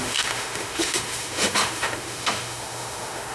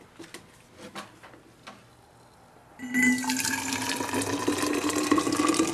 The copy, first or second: first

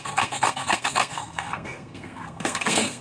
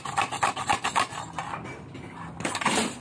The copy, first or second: first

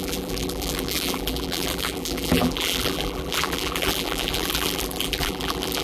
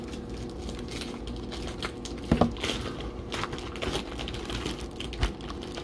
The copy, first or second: first